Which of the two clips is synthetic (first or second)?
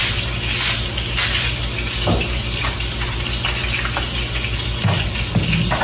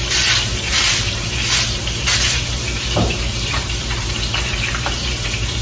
second